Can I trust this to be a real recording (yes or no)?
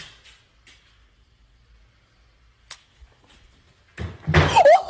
yes